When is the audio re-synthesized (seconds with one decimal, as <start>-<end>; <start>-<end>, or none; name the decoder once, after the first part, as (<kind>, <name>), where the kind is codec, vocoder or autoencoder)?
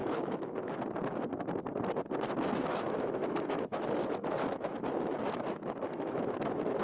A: 0.0-0.8 (autoencoder, DAC-VAE); 2.7-6.8